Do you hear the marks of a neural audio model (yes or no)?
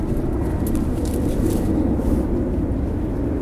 no